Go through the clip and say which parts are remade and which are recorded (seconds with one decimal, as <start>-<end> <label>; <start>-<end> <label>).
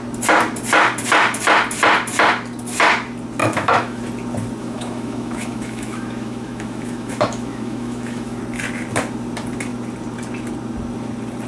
0.0-3.4 recorded; 3.4-4.0 remade; 4.0-4.6 recorded; 4.6-8.4 remade; 8.4-11.5 recorded